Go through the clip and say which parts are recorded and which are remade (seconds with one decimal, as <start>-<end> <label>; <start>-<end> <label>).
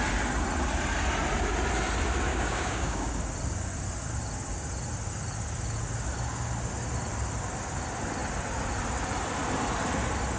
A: 0.0-2.3 recorded; 2.3-3.1 remade; 3.1-10.4 recorded